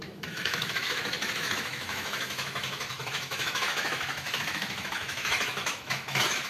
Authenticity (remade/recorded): remade